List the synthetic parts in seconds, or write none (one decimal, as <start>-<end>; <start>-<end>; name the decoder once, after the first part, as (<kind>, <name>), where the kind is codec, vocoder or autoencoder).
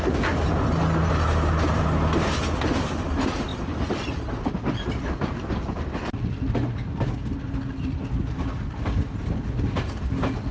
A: 3.5-6.9 (vocoder, BigVGAN v2)